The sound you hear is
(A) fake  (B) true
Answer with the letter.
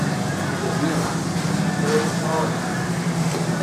B